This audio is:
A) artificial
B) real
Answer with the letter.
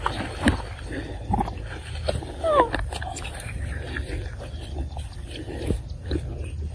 B